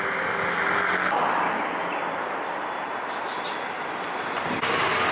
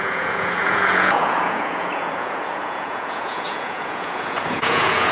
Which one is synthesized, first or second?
second